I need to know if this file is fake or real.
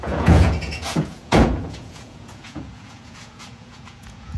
fake